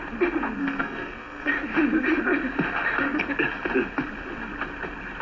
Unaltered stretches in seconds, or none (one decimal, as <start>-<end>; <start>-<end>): 0.0-0.6; 1.5-5.2